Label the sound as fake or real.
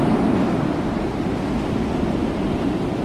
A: real